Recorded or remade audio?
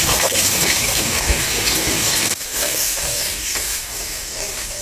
remade